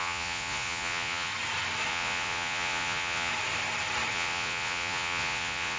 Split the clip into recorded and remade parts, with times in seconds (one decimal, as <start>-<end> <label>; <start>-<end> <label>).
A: 0.0-1.3 remade; 1.3-1.9 recorded; 1.9-3.3 remade; 3.3-4.1 recorded; 4.1-5.8 remade